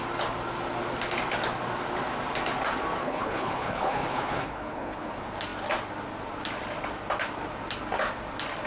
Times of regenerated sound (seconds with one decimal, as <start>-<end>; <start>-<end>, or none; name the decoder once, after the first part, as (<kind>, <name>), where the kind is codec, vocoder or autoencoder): 3.0-5.1 (codec, HILCodec)